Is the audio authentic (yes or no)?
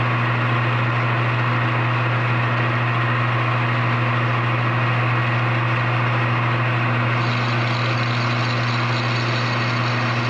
yes